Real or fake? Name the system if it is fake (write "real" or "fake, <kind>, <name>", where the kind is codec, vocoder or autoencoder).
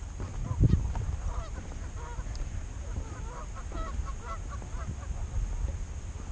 real